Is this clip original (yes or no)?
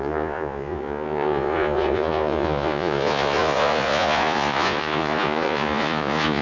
no